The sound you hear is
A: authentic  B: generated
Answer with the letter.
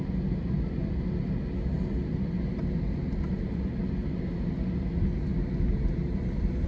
A